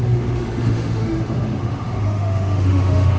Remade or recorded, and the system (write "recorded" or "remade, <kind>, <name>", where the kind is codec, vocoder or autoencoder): remade, autoencoder, DAC-VAE